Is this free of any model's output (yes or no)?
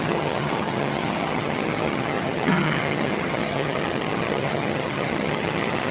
no